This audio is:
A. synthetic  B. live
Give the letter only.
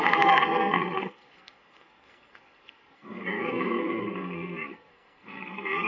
A